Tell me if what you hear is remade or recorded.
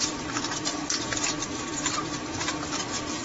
recorded